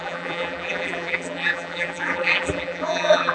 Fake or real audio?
fake